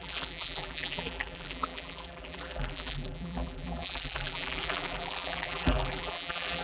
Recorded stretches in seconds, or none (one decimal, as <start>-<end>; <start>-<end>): none